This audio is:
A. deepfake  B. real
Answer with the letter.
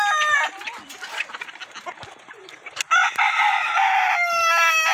B